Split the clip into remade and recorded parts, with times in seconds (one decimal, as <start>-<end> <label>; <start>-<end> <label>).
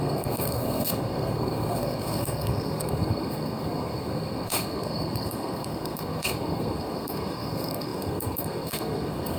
0.0-9.4 remade